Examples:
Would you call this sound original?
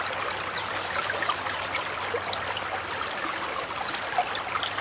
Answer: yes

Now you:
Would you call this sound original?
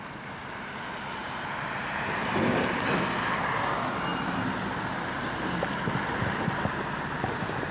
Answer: yes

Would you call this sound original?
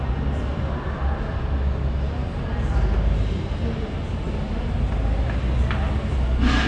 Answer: yes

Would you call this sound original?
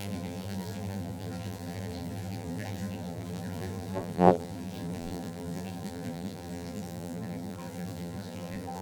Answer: no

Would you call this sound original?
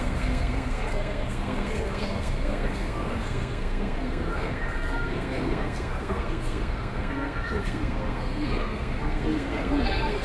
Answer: no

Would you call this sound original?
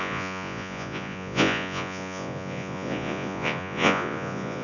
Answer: no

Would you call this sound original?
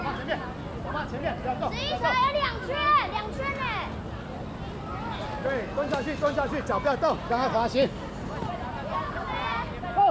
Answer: yes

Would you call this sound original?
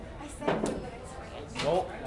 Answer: yes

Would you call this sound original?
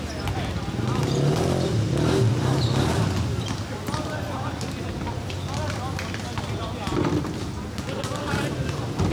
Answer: yes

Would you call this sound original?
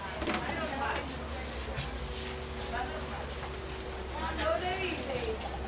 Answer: yes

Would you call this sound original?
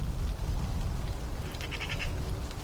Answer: yes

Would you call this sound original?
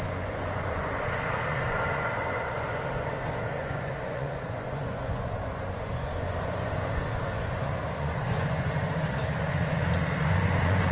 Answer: no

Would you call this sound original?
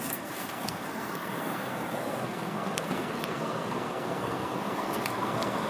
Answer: no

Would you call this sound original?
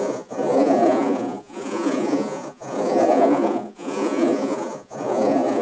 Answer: no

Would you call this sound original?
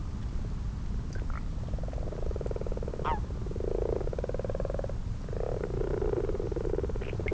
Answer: yes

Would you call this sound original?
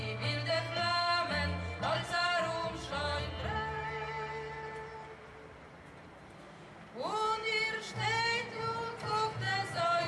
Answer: yes